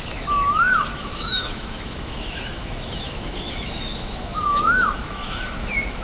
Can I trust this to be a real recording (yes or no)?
no